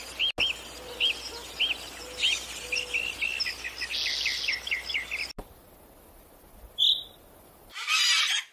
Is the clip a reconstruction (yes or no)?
no